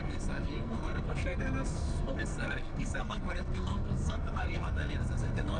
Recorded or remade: remade